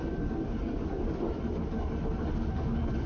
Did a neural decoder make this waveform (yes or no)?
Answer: no